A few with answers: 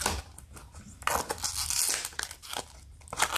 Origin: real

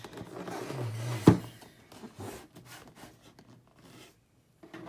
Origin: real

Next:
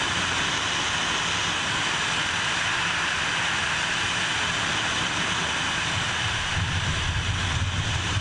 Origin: real